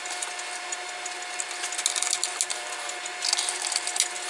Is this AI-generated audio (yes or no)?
no